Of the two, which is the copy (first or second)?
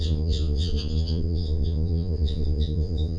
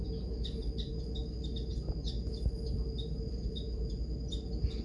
first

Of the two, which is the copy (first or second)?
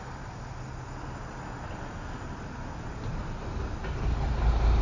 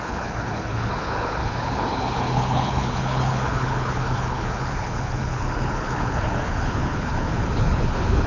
second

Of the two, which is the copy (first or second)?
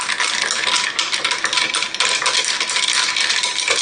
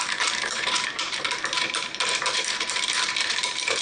second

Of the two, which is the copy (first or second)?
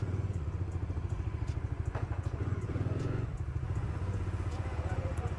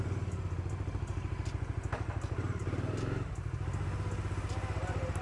first